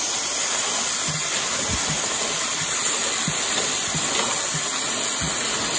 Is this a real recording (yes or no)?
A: yes